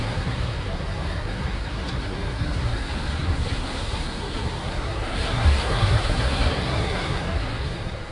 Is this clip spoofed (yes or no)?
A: yes